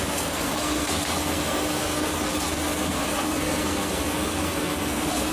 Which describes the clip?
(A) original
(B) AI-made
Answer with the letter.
B